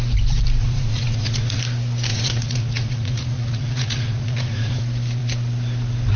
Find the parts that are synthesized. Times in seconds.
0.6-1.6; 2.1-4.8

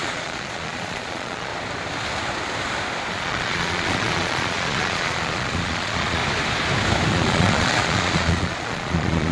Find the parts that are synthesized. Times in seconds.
0.0-1.5; 3.1-6.2; 7.1-9.3

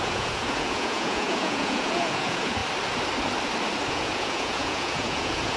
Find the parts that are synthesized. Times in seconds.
0.0-2.6; 3.9-5.6